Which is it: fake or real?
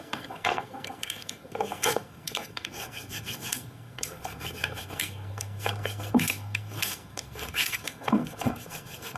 fake